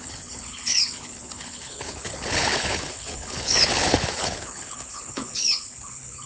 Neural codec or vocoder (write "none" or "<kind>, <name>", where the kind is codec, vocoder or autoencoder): codec, HILCodec